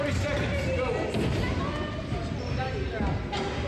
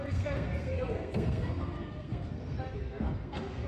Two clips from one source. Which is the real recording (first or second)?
first